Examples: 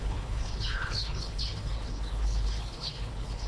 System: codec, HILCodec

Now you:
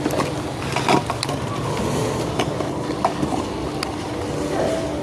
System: none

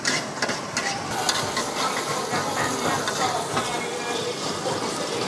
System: none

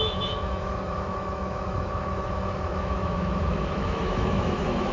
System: autoencoder, DAC-VAE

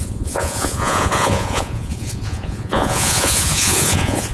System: vocoder, Vocos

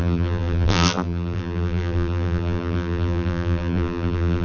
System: vocoder, BigVGAN v2